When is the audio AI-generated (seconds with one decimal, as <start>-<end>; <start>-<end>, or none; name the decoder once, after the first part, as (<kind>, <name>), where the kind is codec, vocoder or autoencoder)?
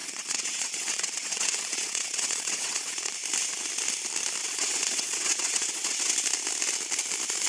0.0-3.1 (vocoder, WaveNeXt); 4.4-6.1